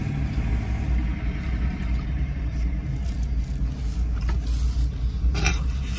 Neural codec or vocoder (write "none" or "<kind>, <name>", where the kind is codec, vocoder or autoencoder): none